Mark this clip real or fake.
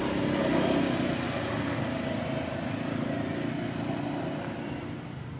real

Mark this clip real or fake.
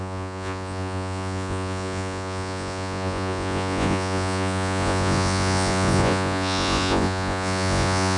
fake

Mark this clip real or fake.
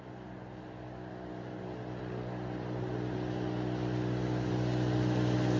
real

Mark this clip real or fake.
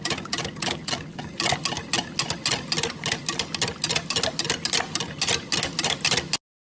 real